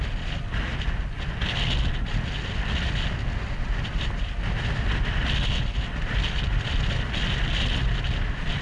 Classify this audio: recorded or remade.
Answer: recorded